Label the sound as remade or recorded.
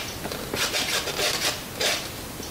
recorded